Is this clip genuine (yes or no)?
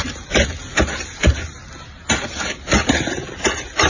yes